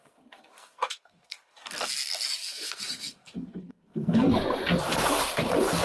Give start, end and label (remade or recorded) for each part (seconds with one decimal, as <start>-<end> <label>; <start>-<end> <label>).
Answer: 0.0-1.9 remade; 1.9-2.4 recorded; 2.4-4.3 remade; 4.3-5.8 recorded